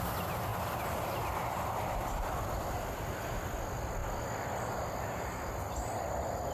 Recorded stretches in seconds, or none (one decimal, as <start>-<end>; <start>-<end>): 0.0-6.5